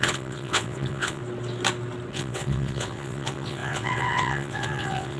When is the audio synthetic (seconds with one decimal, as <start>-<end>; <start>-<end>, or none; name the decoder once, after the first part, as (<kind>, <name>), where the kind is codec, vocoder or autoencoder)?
0.0-1.2 (vocoder, WaveNeXt); 2.1-5.2